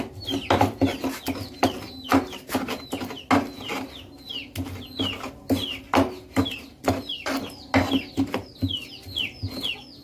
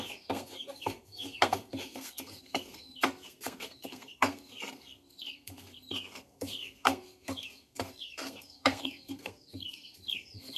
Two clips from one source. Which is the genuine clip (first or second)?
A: first